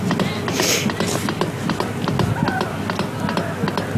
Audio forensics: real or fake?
real